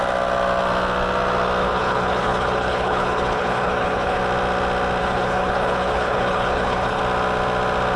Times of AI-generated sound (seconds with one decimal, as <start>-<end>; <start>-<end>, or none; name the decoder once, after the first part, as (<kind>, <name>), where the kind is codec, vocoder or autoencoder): 1.6-4.2 (codec, HILCodec); 5.0-7.0